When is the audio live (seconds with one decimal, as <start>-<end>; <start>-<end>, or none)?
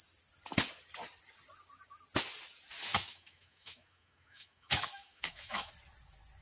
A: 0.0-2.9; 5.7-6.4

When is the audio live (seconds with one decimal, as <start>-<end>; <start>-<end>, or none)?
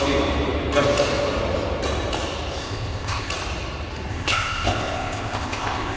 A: 0.0-2.6; 3.3-4.1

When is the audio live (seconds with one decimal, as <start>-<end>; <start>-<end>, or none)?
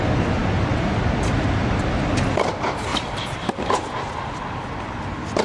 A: 0.0-2.9; 4.1-5.4